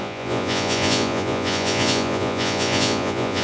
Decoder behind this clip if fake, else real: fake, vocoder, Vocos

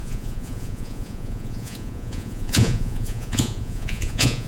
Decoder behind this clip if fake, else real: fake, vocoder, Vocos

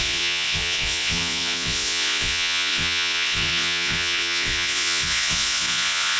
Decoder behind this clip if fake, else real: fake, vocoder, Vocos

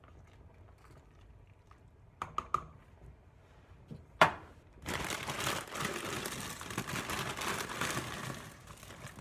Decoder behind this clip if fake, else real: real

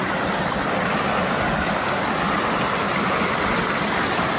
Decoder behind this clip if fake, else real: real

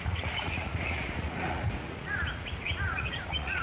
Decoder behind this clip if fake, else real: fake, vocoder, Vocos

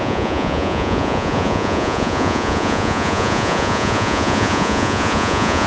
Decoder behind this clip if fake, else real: fake, vocoder, Vocos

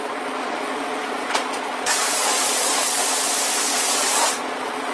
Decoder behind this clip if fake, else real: fake, vocoder, Vocos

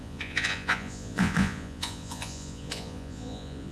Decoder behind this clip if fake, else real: fake, vocoder, Vocos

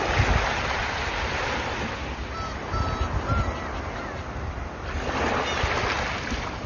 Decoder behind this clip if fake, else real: real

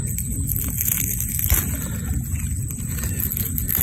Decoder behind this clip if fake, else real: real